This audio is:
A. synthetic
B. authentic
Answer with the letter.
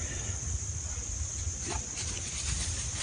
B